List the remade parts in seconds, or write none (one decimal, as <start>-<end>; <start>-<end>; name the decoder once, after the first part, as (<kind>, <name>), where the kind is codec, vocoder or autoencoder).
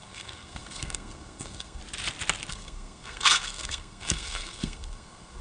0.0-1.8 (codec, SNAC); 2.5-5.4